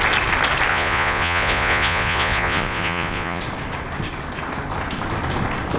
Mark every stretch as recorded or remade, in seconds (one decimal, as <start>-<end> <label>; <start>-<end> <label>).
0.0-0.7 recorded; 0.7-3.4 remade; 3.4-5.8 recorded